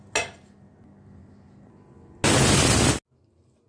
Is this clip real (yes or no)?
yes